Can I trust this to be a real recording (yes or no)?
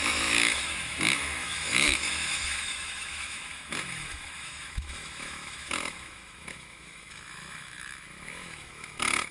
no